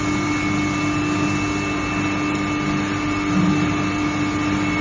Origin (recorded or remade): recorded